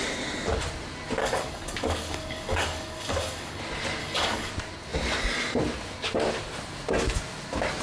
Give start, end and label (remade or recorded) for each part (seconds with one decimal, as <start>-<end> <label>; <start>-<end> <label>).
0.0-1.2 recorded; 1.2-3.6 remade; 3.6-4.0 recorded; 4.0-4.5 remade; 4.5-7.8 recorded